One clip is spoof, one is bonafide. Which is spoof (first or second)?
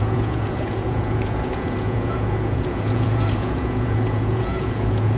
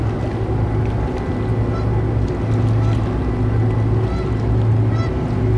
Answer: first